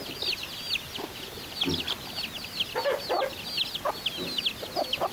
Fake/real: real